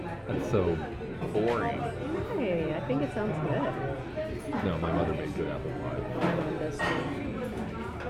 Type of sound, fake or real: real